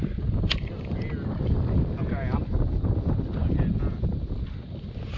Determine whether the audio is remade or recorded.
recorded